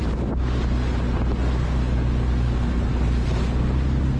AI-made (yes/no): no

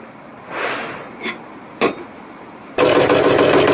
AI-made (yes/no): no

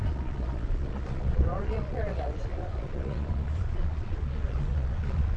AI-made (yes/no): yes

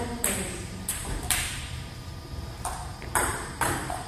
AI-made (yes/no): yes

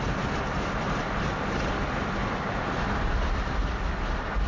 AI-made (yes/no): no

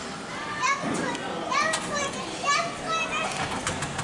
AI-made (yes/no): no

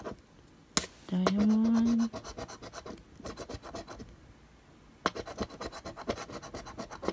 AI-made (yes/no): no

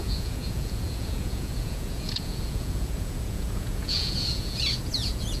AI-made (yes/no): yes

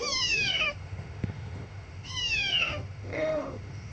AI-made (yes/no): yes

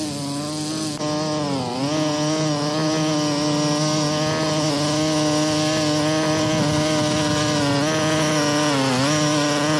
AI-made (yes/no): no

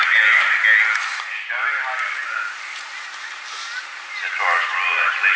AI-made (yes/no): no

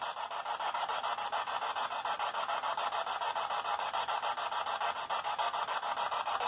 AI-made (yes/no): no